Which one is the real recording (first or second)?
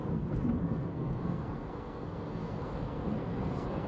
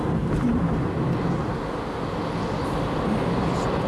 second